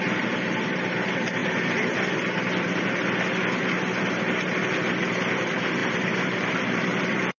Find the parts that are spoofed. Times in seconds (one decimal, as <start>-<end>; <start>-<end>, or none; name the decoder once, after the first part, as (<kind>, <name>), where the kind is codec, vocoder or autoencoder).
1.4-2.9 (vocoder, BigVGAN v2); 5.8-7.4